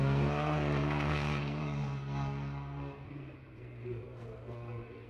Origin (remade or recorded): remade